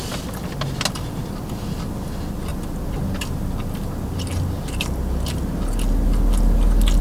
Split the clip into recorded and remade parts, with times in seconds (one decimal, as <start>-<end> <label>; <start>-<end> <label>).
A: 0.0-7.0 recorded

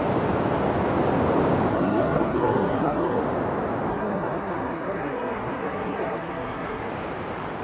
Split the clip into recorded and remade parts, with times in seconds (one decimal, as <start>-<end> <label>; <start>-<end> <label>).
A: 0.0-1.7 recorded; 1.7-3.2 remade; 3.2-3.9 recorded; 3.9-6.9 remade; 6.9-7.6 recorded

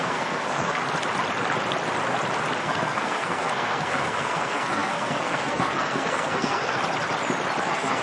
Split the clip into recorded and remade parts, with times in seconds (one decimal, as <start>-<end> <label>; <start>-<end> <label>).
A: 0.0-0.8 remade; 0.8-2.6 recorded; 2.6-6.8 remade; 6.8-7.6 recorded; 7.6-8.0 remade

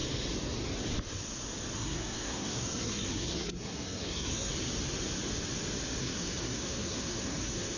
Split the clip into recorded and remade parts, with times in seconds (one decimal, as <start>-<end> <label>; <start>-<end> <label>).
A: 0.0-1.8 recorded; 1.8-4.5 remade; 4.5-6.0 recorded; 6.0-7.8 remade

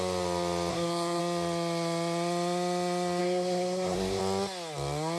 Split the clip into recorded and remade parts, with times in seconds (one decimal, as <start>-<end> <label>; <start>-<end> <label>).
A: 0.0-0.7 recorded; 0.7-1.2 remade; 1.2-3.2 recorded; 3.2-4.2 remade; 4.2-5.2 recorded

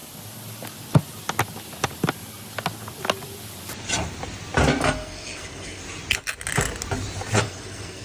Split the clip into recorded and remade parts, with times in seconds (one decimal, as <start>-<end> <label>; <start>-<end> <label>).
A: 0.0-4.8 recorded; 4.8-5.8 remade; 5.8-7.4 recorded; 7.4-8.0 remade